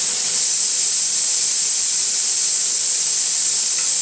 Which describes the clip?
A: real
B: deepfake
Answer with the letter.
A